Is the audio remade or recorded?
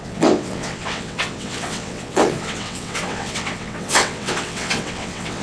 remade